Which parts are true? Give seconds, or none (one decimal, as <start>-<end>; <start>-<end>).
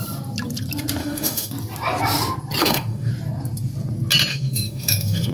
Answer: 0.0-1.0; 1.5-2.6; 3.1-4.3